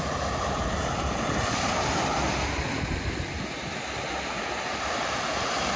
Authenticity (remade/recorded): recorded